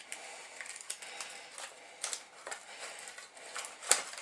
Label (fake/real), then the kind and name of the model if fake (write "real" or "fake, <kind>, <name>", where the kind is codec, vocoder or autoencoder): real